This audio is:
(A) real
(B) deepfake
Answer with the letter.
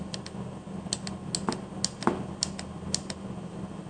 A